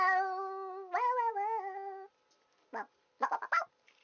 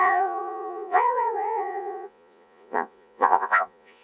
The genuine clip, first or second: first